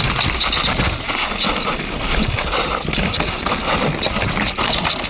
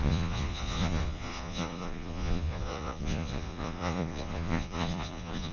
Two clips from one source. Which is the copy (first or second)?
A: second